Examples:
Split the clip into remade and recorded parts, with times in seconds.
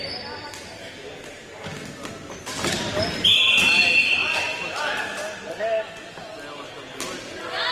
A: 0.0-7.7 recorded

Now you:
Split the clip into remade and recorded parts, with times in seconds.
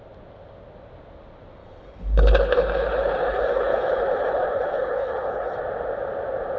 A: 0.0-1.6 recorded; 1.6-5.6 remade; 5.6-6.6 recorded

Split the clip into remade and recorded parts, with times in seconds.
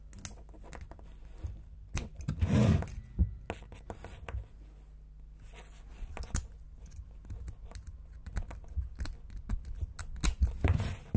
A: 0.0-11.2 recorded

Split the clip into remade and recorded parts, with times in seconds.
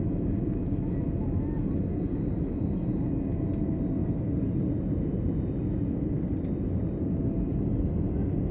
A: 0.0-8.5 recorded